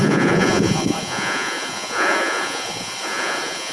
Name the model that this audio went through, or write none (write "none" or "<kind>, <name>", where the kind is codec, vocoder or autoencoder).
vocoder, Vocos